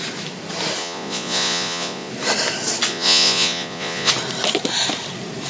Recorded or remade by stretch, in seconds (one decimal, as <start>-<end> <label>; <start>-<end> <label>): 0.0-0.8 recorded; 0.8-2.1 remade; 2.1-2.9 recorded; 2.9-4.1 remade; 4.1-5.5 recorded